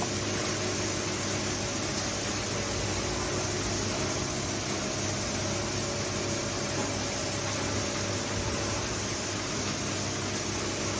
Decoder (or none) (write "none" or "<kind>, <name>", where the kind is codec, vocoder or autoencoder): none